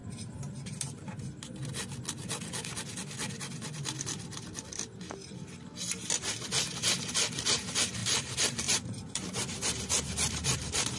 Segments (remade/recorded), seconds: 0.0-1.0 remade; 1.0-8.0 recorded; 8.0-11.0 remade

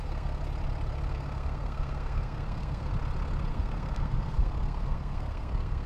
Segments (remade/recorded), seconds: 0.0-0.4 remade; 0.4-1.1 recorded; 1.1-2.9 remade; 2.9-3.5 recorded; 3.5-5.9 remade

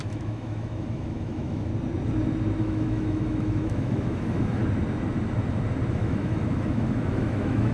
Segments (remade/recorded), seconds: 0.0-1.7 remade; 1.7-2.6 recorded; 2.6-4.6 remade; 4.6-5.9 recorded; 5.9-7.7 remade

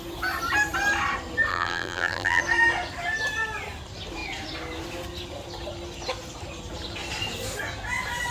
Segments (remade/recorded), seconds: 0.0-1.5 recorded; 1.5-2.4 remade; 2.4-8.3 recorded

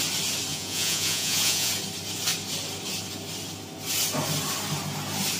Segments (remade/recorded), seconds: 0.0-0.5 recorded; 0.5-1.7 remade; 1.7-5.4 recorded